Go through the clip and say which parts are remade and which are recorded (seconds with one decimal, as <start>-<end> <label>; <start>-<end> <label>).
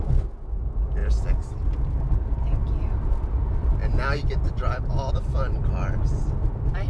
0.0-1.0 recorded; 1.0-5.1 remade; 5.1-6.9 recorded